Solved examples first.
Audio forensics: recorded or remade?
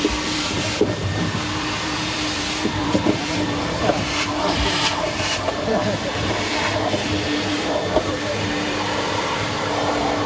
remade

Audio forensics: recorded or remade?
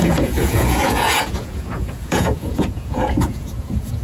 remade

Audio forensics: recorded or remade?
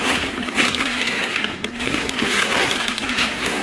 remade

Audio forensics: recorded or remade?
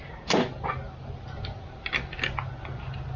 recorded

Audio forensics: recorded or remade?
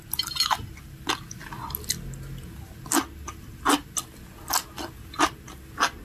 recorded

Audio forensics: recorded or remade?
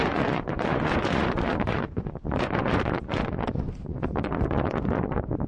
remade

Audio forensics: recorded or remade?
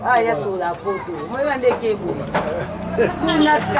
recorded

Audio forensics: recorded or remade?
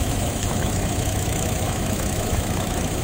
remade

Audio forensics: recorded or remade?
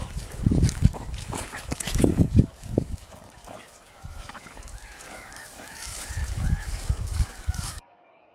remade